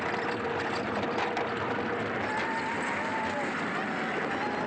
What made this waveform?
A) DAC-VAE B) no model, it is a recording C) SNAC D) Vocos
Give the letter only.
B